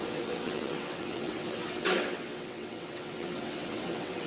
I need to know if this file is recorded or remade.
remade